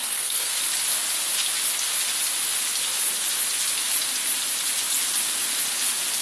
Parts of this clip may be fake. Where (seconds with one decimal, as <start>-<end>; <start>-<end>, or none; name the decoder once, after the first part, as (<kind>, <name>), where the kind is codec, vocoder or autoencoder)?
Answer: 0.0-0.6 (codec, SNAC)